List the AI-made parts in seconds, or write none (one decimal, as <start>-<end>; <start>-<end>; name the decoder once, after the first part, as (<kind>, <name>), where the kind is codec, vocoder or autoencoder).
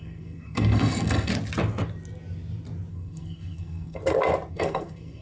0.0-1.3 (codec, SNAC); 2.9-4.0; 4.5-5.2